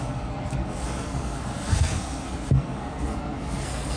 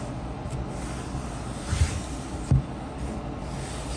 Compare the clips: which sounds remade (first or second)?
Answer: first